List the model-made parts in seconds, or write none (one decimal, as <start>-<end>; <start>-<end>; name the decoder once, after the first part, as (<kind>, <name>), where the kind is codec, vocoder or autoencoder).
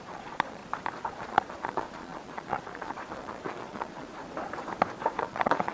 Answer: 0.0-0.6 (vocoder, Vocos); 1.1-4.1; 5.2-5.7